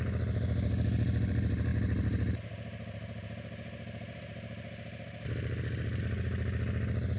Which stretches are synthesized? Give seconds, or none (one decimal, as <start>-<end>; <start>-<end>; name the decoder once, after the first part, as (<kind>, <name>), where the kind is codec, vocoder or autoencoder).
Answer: 0.0-7.2 (vocoder, BigVGAN v2)